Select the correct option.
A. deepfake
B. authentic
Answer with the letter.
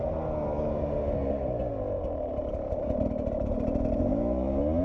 B